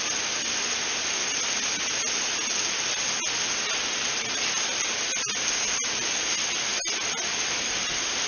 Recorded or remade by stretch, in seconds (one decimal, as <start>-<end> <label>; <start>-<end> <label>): 0.0-8.3 recorded